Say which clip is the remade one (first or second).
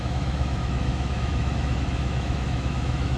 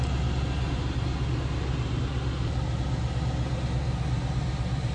first